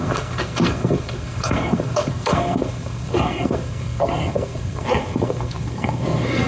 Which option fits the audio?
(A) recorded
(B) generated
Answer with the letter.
B